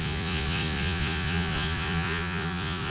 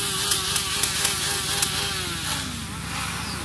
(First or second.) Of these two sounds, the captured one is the second